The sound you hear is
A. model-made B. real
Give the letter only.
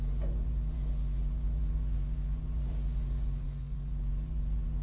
A